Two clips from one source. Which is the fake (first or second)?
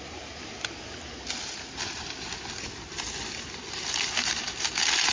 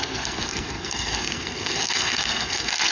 second